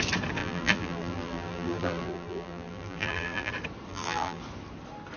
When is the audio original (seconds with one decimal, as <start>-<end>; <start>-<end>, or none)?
0.0-0.4; 3.5-3.9; 4.4-5.2